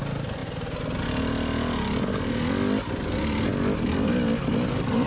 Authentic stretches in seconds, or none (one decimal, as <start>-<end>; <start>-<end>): 0.0-5.1